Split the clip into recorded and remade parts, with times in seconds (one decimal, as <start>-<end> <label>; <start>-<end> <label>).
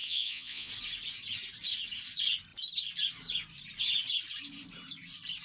0.0-0.7 remade; 0.7-5.4 recorded